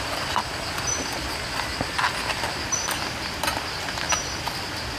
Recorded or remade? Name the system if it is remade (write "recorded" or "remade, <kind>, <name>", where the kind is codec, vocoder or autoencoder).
recorded